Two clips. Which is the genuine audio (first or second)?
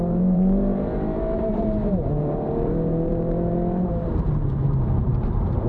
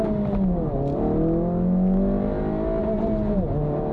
second